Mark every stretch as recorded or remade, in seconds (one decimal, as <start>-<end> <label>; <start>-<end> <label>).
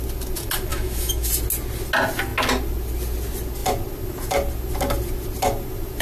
0.0-0.7 recorded; 0.7-1.3 remade; 1.3-6.0 recorded